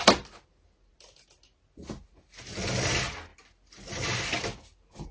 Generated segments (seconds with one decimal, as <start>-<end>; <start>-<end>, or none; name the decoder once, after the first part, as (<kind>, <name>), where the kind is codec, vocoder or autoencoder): none